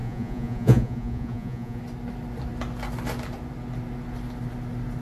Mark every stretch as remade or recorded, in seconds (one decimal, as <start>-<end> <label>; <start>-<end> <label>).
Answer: 0.0-1.8 remade; 1.8-5.0 recorded